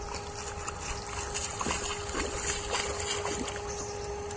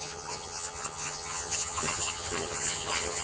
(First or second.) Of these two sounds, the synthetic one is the second